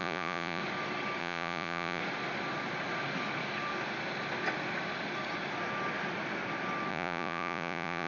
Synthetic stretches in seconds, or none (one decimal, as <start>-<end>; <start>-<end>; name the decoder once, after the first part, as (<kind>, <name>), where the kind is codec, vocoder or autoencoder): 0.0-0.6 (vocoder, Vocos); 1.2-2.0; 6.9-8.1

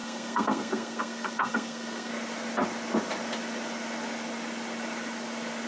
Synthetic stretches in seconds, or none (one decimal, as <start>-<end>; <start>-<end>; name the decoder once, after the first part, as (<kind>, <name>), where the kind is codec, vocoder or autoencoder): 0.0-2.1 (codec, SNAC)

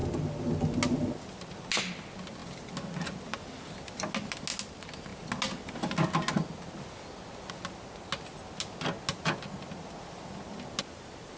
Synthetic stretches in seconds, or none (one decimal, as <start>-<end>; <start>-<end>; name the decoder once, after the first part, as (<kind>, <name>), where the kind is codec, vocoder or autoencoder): none

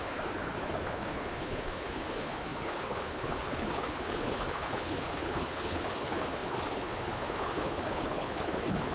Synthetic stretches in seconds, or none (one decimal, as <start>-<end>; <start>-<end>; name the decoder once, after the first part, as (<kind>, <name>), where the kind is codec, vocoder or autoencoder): 0.0-8.9 (codec, HILCodec)

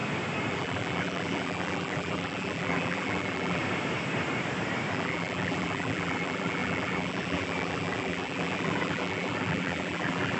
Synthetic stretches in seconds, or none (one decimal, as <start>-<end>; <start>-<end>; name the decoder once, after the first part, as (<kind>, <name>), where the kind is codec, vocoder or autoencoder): 0.5-3.6 (vocoder, BigVGAN v2); 4.9-10.4

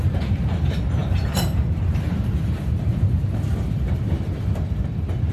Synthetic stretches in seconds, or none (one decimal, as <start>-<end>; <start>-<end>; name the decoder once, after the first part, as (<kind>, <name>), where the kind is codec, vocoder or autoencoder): 0.0-5.3 (vocoder, BigVGAN v2)